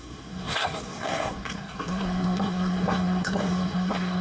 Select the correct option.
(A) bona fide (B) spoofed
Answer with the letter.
B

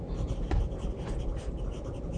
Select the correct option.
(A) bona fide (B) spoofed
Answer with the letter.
A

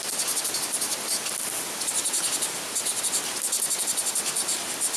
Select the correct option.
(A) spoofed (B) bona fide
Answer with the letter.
B